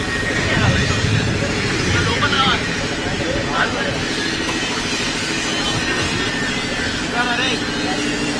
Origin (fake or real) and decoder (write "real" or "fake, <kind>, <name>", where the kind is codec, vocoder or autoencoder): real